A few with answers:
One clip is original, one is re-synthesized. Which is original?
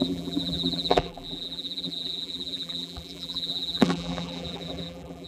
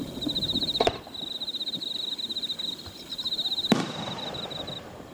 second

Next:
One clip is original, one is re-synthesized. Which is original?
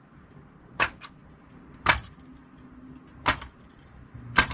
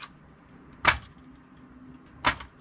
second